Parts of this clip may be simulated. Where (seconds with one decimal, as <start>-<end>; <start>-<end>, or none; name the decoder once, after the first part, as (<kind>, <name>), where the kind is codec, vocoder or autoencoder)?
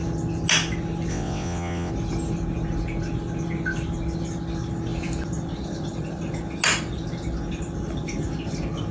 1.1-1.9 (vocoder, WaveNeXt)